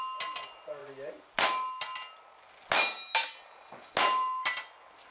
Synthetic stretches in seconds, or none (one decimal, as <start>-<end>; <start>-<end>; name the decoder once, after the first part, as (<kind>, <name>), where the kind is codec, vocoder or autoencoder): none